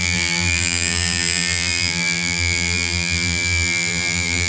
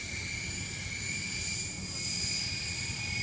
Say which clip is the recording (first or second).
second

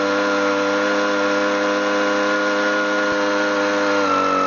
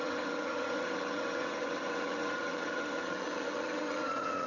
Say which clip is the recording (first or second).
first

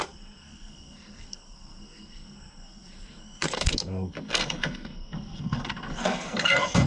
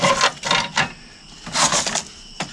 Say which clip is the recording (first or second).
second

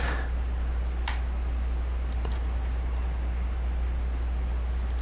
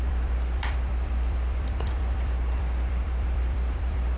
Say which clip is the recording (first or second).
first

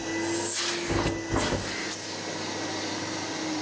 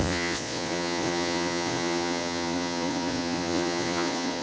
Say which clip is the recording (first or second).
first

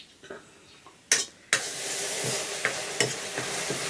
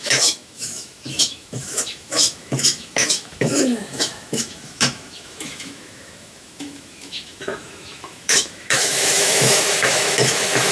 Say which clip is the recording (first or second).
first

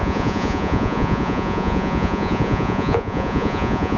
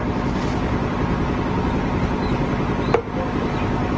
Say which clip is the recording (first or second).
second